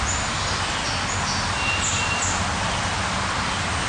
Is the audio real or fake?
real